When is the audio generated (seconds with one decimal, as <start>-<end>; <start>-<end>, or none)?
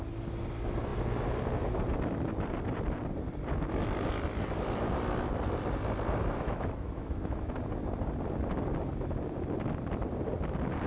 6.2-7.6